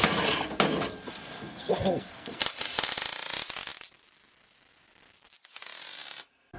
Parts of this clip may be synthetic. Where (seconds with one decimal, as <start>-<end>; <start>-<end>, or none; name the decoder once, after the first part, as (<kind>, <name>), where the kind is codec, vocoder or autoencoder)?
1.5-2.4 (codec, SNAC)